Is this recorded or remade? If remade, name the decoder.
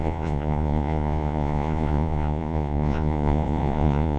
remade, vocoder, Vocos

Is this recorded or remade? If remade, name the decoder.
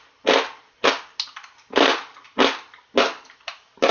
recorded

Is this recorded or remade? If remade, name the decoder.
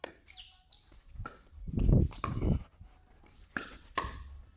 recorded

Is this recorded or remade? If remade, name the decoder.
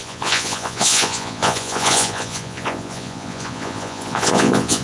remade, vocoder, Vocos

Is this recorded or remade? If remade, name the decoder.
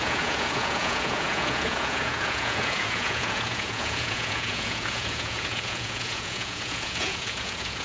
remade, vocoder, Vocos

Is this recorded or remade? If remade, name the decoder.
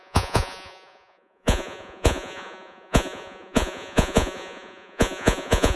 remade, vocoder, Vocos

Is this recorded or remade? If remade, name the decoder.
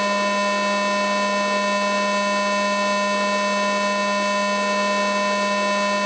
recorded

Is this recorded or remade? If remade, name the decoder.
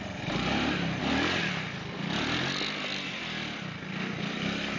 recorded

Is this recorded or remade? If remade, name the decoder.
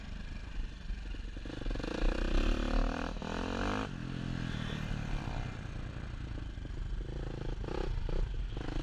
recorded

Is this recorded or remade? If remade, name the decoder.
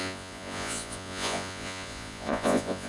remade, vocoder, Vocos